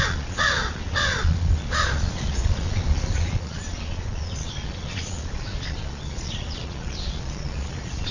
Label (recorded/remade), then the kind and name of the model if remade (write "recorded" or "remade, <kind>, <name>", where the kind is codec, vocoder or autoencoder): remade, vocoder, Vocos